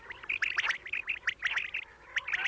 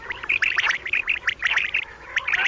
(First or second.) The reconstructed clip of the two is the second